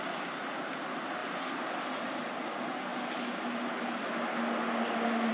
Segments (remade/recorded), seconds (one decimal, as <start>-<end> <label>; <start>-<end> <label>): 0.0-5.3 recorded